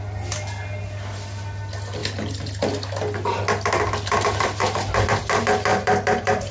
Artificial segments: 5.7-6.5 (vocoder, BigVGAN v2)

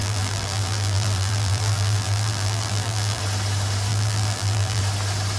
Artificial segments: 0.0-3.2 (vocoder, BigVGAN v2); 3.9-4.8

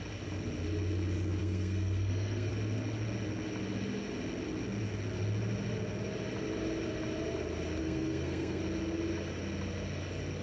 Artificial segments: 1.4-2.5 (codec, SNAC); 7.8-8.6

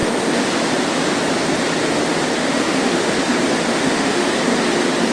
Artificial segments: 2.4-3.1 (autoencoder, DAC-VAE); 3.7-4.3

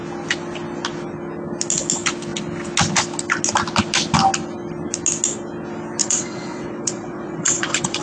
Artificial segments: 6.0-8.0 (vocoder, WaveNeXt)

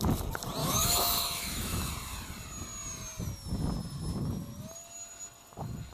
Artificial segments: 0.6-1.9 (autoencoder, DAC-VAE)

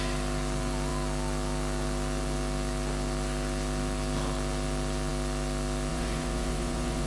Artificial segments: 5.9-7.1 (vocoder, Vocos)

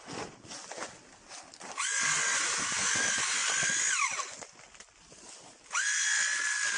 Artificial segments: none